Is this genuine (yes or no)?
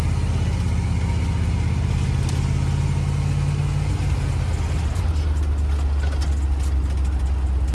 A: yes